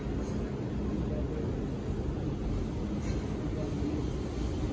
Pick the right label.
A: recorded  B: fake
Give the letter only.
A